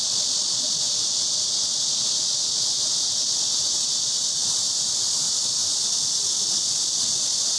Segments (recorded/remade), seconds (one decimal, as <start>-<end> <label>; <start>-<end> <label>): 0.0-7.6 recorded